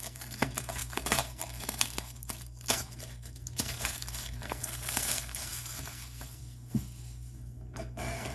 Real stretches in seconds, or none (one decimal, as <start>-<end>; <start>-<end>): none

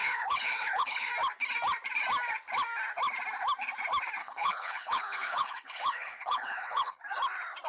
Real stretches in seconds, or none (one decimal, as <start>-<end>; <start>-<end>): 1.1-4.2; 7.0-7.7

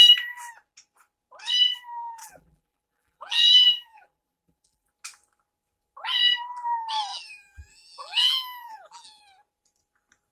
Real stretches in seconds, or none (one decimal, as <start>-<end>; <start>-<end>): 0.0-2.2; 4.9-7.1; 9.2-10.3

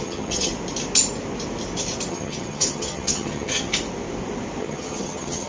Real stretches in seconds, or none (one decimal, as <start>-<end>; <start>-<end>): 0.5-2.1; 3.7-4.6